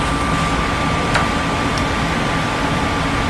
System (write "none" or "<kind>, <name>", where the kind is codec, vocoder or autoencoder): none